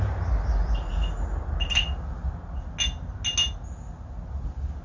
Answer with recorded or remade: recorded